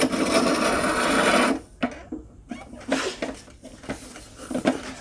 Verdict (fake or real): real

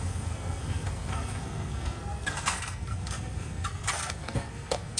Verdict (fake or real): fake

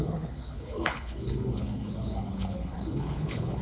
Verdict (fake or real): fake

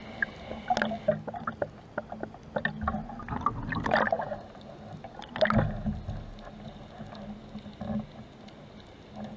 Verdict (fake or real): real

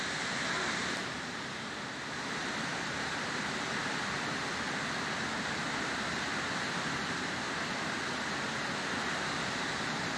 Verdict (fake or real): real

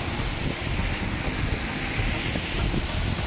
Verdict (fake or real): real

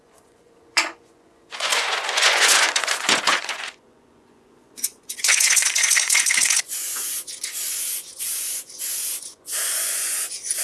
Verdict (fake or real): fake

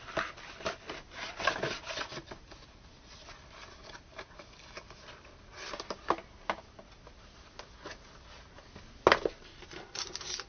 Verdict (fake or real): real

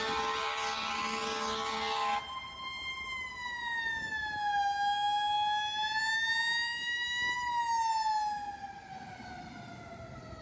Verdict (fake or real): real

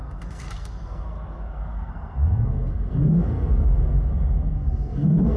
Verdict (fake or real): fake